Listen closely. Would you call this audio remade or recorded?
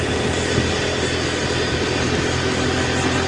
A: recorded